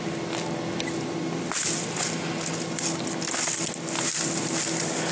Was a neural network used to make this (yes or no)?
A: no